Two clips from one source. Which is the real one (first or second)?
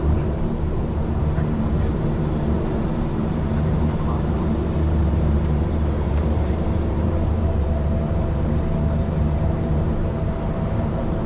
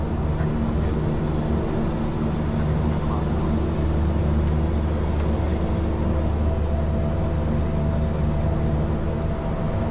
second